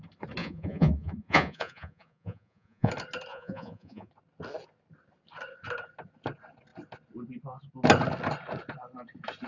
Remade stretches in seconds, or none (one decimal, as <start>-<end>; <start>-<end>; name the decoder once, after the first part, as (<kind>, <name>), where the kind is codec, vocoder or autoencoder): 0.4-2.9 (vocoder, Vocos); 3.3-4.1